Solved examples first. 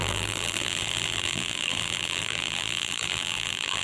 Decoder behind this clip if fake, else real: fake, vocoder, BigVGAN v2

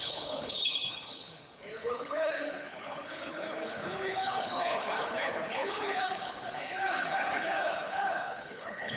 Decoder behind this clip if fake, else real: fake, codec, HILCodec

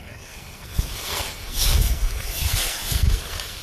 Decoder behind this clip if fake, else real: fake, codec, SNAC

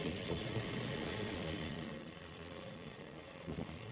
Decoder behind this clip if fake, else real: fake, vocoder, Vocos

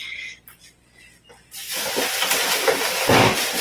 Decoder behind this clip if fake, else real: real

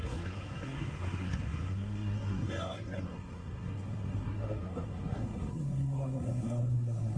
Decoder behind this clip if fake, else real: fake, codec, SNAC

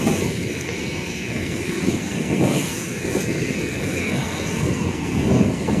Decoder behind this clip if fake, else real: fake, codec, SNAC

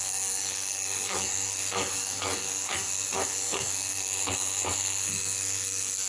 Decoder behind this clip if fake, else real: fake, codec, SNAC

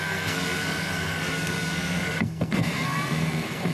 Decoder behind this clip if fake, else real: fake, codec, SNAC